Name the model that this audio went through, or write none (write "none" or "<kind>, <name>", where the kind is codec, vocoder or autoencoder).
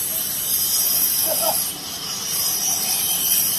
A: vocoder, BigVGAN v2